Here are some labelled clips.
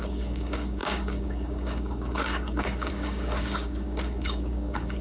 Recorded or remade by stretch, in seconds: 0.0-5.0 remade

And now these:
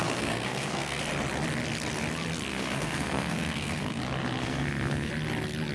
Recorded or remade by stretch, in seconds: 0.0-1.0 remade; 1.0-2.5 recorded; 2.5-4.0 remade; 4.0-4.4 recorded; 4.4-5.1 remade; 5.1-5.7 recorded

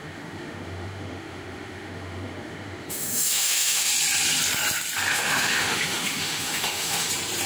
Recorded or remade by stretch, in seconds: 0.0-3.9 remade; 3.9-5.1 recorded; 5.1-7.1 remade; 7.1-7.5 recorded